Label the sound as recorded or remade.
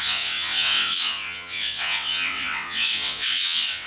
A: remade